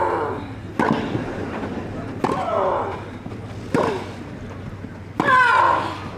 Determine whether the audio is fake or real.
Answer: real